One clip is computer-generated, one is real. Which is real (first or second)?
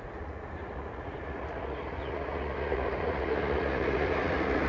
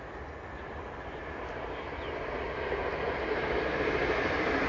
second